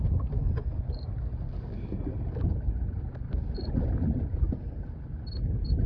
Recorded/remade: recorded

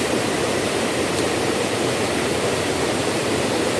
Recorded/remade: remade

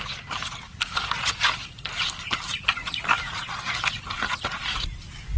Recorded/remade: remade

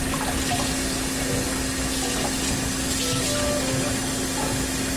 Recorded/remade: recorded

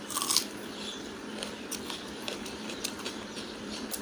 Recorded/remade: remade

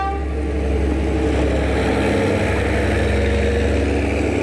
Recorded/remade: recorded